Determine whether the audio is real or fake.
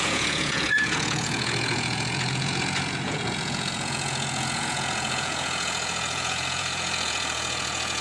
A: fake